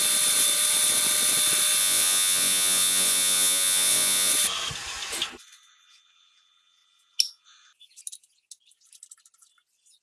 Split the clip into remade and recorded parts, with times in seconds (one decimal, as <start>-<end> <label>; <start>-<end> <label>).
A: 0.0-1.8 recorded; 1.8-4.3 remade; 4.3-10.0 recorded